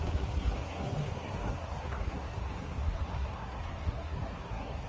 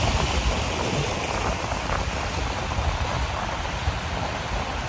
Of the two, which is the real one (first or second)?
second